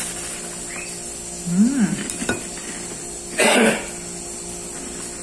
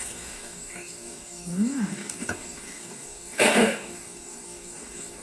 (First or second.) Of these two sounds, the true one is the first